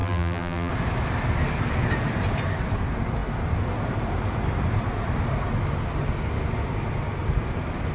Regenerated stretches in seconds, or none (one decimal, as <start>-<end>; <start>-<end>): 0.0-0.7